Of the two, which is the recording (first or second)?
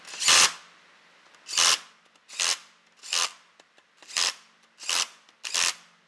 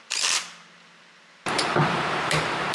first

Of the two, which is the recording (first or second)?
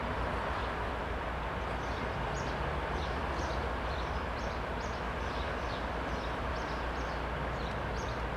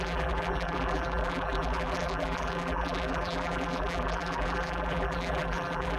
first